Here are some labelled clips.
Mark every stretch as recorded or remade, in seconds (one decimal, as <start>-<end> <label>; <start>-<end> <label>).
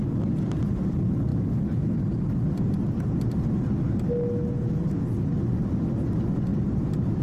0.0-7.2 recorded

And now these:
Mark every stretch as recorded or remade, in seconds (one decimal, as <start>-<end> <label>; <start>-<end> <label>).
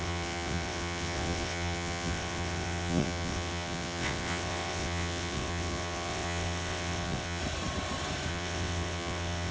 0.0-7.4 remade; 7.4-8.3 recorded; 8.3-9.5 remade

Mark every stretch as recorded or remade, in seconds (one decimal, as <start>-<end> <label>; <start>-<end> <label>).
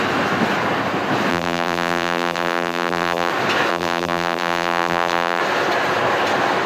0.0-1.3 recorded; 1.3-3.3 remade; 3.3-3.7 recorded; 3.7-5.4 remade; 5.4-6.7 recorded